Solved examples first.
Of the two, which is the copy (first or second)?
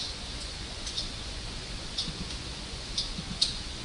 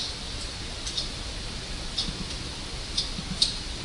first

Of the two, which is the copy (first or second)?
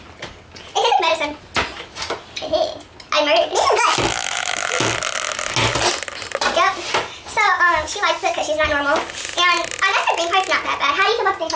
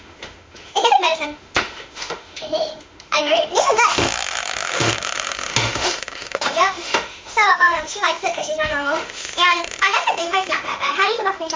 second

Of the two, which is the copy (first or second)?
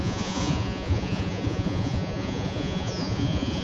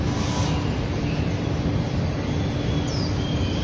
first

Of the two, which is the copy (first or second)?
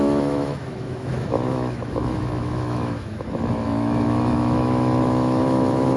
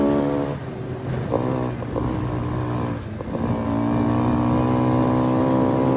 first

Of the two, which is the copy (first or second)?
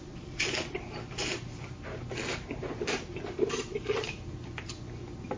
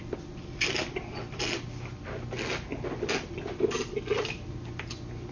first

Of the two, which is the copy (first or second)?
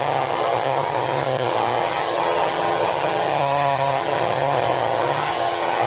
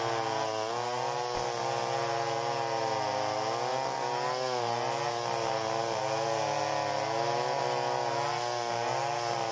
first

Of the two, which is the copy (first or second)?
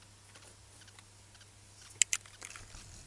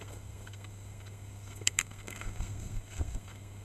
second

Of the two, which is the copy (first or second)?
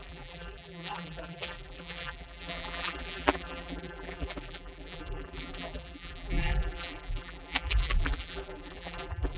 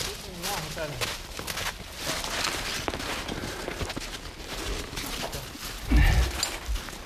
first